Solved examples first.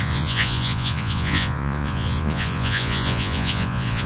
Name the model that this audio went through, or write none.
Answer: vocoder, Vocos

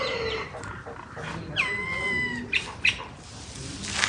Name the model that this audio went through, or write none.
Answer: none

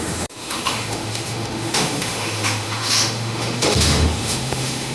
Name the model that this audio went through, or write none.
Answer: autoencoder, DAC-VAE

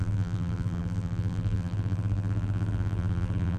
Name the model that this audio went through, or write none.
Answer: vocoder, BigVGAN v2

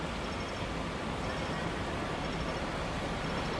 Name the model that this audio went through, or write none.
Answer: none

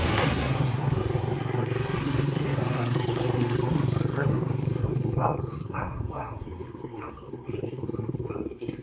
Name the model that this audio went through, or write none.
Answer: codec, SNAC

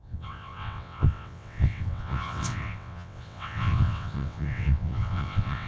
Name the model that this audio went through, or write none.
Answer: vocoder, WaveNeXt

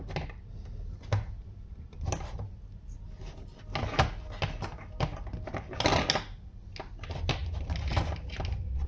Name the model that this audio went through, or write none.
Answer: none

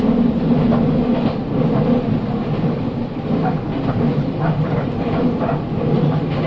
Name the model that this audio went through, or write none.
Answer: none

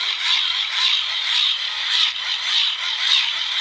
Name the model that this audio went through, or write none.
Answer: none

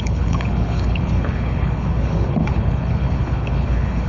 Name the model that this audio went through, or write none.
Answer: codec, HILCodec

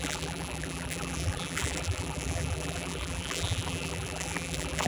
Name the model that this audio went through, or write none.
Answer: vocoder, BigVGAN v2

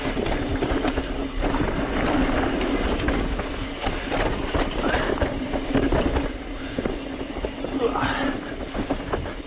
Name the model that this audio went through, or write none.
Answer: none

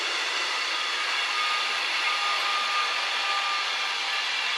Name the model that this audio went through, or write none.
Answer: none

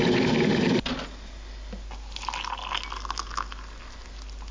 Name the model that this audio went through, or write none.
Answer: none